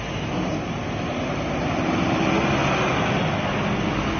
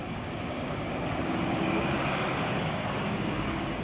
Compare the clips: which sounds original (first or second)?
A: first